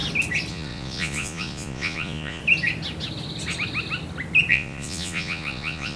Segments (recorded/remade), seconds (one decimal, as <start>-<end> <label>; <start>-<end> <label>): 0.0-0.5 recorded; 0.5-2.4 remade; 2.4-4.5 recorded; 4.5-6.0 remade